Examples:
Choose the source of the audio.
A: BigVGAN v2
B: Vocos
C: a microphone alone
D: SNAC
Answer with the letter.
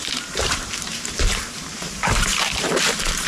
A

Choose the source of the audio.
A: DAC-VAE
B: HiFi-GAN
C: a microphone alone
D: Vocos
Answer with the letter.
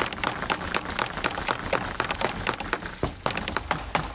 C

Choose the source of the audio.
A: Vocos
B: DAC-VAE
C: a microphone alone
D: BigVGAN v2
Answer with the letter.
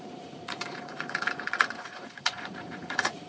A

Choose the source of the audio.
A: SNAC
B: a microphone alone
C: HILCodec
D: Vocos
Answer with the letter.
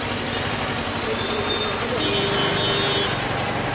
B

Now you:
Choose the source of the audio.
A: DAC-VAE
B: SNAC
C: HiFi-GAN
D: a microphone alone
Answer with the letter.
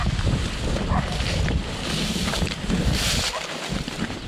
D